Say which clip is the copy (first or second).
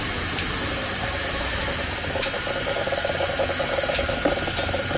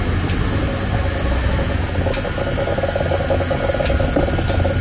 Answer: first